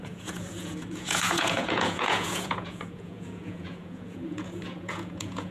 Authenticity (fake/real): fake